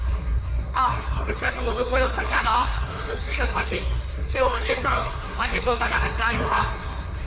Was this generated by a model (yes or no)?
yes